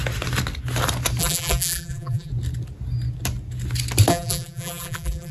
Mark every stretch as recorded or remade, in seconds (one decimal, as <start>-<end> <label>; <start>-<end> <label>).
0.0-1.2 recorded; 1.2-2.3 remade; 2.3-4.1 recorded; 4.1-5.3 remade